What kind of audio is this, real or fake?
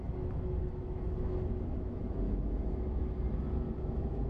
fake